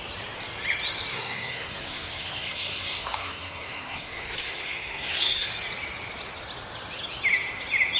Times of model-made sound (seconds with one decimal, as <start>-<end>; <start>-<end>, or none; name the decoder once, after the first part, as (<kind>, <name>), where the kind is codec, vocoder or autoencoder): 1.1-5.5 (codec, SNAC)